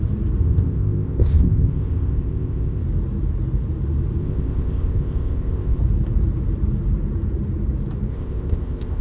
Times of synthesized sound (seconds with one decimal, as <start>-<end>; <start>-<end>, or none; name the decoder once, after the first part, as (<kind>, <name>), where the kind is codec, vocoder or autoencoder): 0.4-2.8 (codec, ZipCodec); 4.2-5.8; 8.1-9.0